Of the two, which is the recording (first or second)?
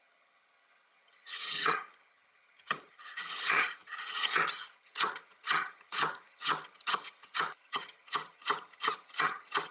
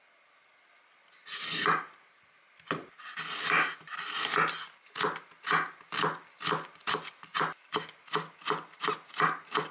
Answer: second